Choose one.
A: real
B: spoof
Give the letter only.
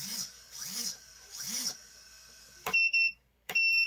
B